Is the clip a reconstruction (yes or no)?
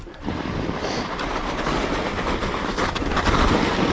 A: yes